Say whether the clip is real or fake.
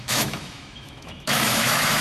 fake